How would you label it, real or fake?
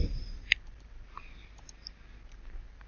real